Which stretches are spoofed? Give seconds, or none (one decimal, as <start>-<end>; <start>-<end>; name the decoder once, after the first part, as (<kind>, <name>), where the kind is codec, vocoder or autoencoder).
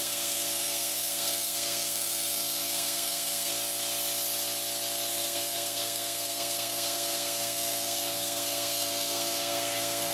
0.0-3.5 (codec, SNAC); 5.1-10.1